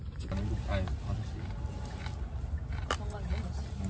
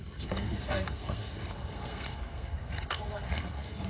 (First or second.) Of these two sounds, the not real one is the second